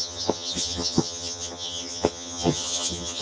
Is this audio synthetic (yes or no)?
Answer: yes